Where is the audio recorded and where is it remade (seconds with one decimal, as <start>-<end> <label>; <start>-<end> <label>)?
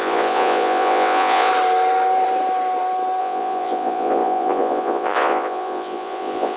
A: 0.0-1.5 remade; 1.5-3.2 recorded; 3.2-6.6 remade